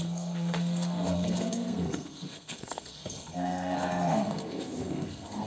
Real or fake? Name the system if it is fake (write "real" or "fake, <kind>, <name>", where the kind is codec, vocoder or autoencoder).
fake, codec, SNAC